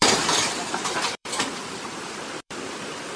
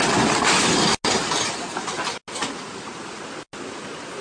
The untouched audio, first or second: second